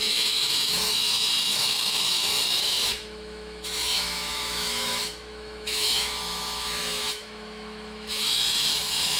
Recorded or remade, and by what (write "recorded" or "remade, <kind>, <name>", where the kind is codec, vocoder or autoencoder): remade, autoencoder, DAC-VAE